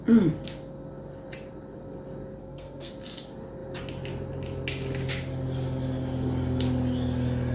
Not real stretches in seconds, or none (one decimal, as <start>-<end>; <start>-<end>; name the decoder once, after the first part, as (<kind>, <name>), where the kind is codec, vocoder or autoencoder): 2.4-2.9 (codec, SNAC)